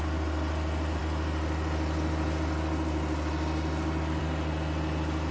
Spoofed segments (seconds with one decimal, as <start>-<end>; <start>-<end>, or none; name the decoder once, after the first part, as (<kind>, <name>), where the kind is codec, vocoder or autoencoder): none